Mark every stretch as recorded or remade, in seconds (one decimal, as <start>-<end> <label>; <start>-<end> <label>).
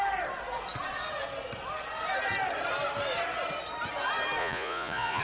0.0-4.4 recorded; 4.4-5.2 remade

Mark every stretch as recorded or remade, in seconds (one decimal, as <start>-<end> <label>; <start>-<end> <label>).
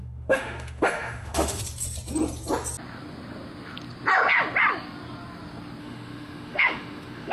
0.0-1.6 remade; 1.6-5.8 recorded; 5.8-7.3 remade